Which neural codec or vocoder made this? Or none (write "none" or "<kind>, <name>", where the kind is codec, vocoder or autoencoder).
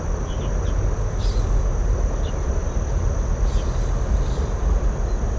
none